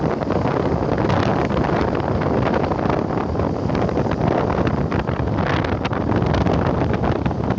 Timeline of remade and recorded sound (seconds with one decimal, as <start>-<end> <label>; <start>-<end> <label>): 0.0-7.6 recorded